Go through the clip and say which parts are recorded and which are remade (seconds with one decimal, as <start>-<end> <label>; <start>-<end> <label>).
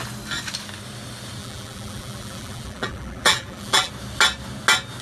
0.0-1.4 recorded; 1.4-3.9 remade; 3.9-5.0 recorded